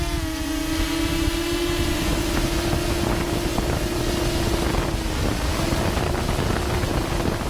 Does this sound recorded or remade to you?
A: recorded